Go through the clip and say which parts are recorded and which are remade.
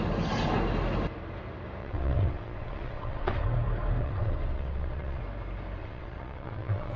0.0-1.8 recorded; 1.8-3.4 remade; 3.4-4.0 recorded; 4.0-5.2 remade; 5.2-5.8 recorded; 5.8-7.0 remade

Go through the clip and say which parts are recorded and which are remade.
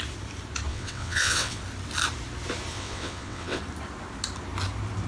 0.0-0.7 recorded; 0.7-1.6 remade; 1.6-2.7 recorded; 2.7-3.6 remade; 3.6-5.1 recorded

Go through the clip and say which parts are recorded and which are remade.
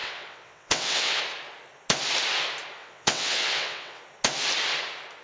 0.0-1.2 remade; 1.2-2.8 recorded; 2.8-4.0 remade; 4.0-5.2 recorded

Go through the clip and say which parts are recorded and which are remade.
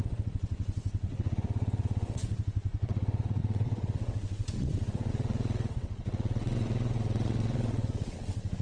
0.0-8.6 remade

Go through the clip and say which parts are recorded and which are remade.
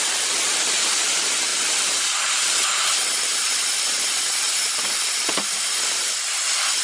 0.0-6.8 recorded